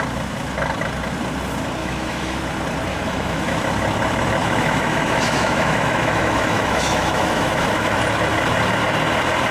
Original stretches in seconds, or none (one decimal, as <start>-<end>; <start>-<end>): 0.0-1.8; 2.4-2.9; 3.6-4.4; 8.0-9.5